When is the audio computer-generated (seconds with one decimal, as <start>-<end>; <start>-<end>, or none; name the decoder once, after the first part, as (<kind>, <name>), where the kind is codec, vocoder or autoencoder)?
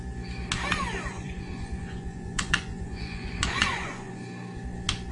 1.1-4.2 (vocoder, Vocos)